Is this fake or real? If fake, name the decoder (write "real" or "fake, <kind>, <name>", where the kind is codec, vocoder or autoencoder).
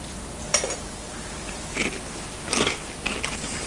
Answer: real